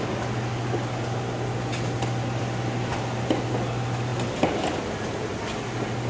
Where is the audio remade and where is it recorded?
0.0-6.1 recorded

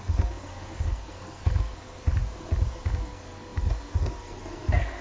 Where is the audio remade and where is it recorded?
0.0-2.2 remade; 2.2-2.7 recorded; 2.7-5.0 remade

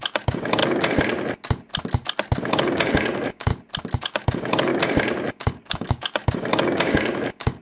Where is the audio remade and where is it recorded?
0.0-0.6 remade; 0.6-2.4 recorded; 2.4-3.5 remade; 3.5-4.0 recorded; 4.0-4.7 remade; 4.7-5.3 recorded; 5.3-7.6 remade

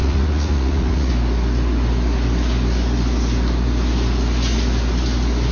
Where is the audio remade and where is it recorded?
0.0-1.1 remade; 1.1-5.5 recorded